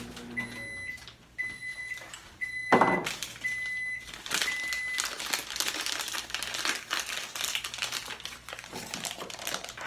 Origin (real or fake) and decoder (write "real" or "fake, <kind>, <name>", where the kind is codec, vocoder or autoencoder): real